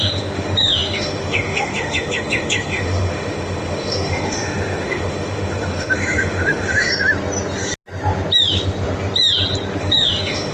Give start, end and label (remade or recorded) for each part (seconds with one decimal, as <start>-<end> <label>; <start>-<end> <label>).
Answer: 0.0-6.9 remade; 6.9-9.8 recorded; 9.8-10.5 remade